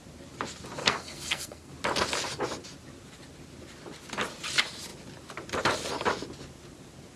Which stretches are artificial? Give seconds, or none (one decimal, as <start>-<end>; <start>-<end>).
0.8-1.7